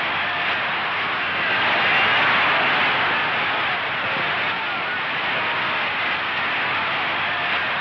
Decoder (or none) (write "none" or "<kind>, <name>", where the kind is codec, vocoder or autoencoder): none